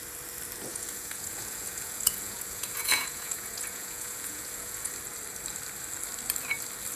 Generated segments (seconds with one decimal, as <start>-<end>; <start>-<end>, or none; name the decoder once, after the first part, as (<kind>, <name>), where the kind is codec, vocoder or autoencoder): 0.7-4.9 (vocoder, Vocos)